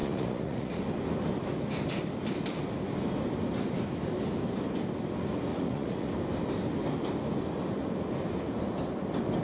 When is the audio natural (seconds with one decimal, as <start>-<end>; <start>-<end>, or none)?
0.8-5.5; 6.1-9.4